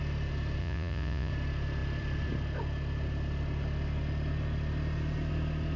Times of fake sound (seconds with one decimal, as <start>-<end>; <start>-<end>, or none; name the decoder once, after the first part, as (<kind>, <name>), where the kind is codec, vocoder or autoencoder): 0.6-1.3 (vocoder, Vocos)